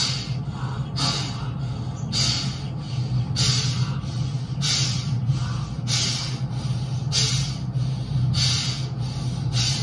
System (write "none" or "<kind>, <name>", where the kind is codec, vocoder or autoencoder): none